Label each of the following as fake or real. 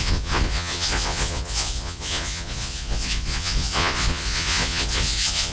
fake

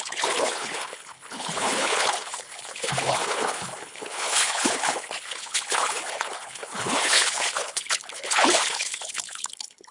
fake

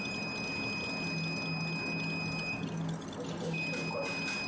real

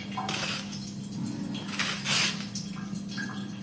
real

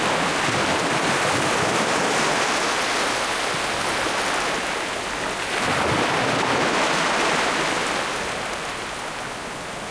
real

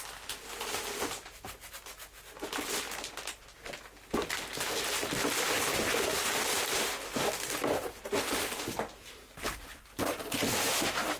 real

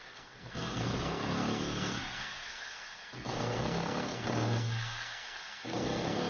fake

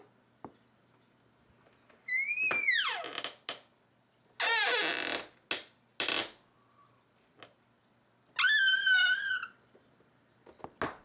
real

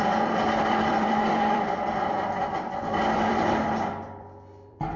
fake